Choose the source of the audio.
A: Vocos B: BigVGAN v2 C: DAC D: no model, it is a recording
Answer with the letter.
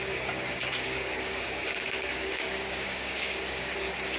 C